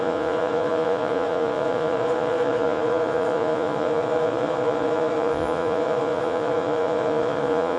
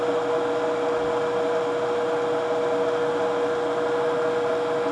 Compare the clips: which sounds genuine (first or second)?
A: second